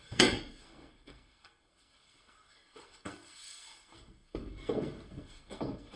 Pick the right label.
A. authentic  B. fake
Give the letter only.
B